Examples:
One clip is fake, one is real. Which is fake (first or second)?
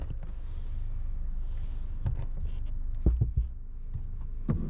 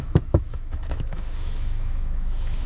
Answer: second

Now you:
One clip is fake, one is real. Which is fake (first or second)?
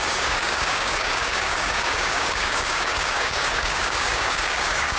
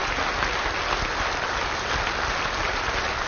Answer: first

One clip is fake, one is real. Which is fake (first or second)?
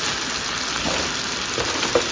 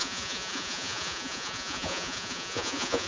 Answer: second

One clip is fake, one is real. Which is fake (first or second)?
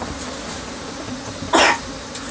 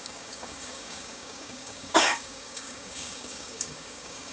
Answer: second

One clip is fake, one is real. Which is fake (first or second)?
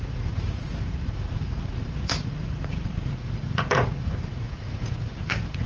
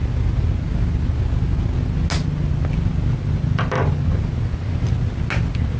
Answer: first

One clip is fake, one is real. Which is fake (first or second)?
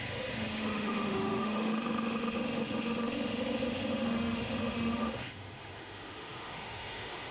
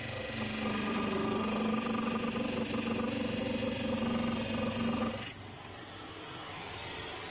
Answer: first